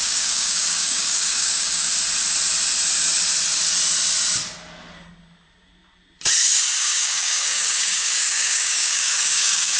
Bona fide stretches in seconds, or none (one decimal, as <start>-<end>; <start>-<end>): 1.9-6.8